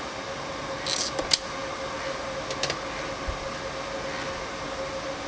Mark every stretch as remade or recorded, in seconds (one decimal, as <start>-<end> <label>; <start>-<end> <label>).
0.0-5.3 recorded